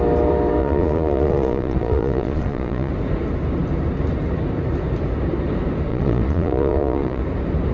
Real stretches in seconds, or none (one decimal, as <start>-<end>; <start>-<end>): 0.0-0.6; 2.9-5.9; 7.2-7.7